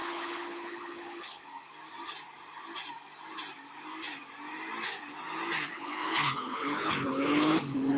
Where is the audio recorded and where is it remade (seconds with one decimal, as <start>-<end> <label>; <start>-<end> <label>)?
0.0-1.7 remade; 1.7-5.7 recorded; 5.7-8.0 remade